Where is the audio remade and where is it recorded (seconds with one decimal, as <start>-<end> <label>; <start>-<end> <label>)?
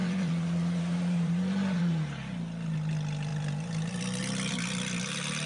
0.0-1.8 remade; 1.8-3.3 recorded; 3.3-4.2 remade; 4.2-5.5 recorded